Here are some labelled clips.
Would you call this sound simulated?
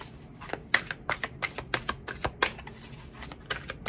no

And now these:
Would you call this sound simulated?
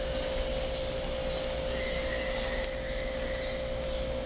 no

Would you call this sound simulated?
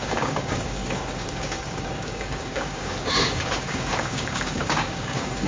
yes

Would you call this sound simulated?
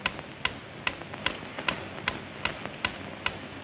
no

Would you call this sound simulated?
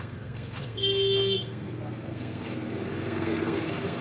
yes